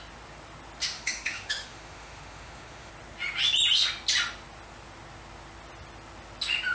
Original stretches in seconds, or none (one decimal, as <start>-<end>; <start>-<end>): 0.0-0.8; 2.9-6.7